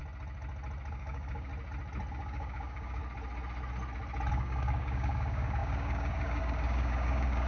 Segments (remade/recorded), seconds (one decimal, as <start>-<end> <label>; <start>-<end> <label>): 0.0-0.9 recorded; 0.9-1.5 remade; 1.5-2.1 recorded; 2.1-3.0 remade; 3.0-4.3 recorded; 4.3-7.5 remade